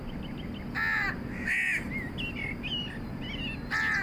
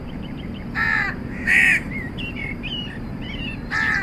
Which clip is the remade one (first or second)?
second